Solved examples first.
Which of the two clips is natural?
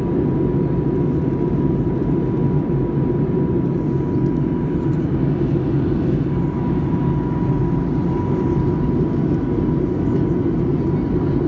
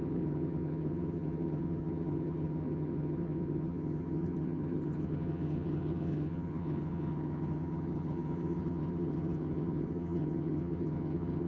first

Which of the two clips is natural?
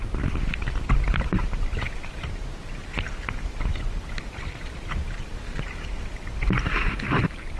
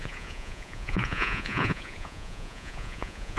first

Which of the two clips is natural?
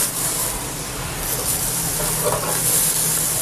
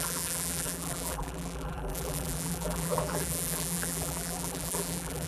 first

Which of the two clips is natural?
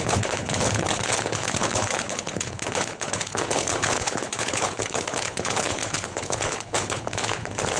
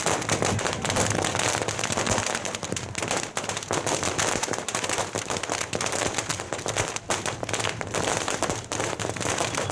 second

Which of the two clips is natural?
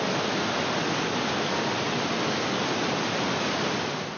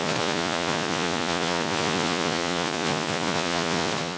first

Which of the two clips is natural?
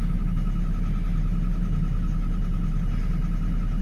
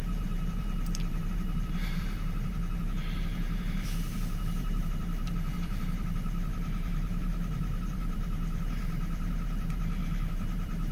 first